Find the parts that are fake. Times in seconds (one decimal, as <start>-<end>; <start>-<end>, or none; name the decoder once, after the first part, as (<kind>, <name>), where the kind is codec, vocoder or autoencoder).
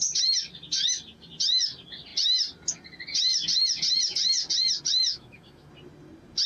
5.1-5.7 (autoencoder, DAC-VAE)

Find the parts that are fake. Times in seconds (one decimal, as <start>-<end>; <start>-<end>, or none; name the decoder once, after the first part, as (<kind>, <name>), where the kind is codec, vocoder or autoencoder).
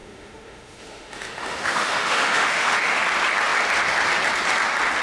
0.0-3.0 (autoencoder, DAC-VAE)